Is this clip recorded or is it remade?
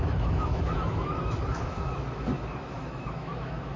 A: remade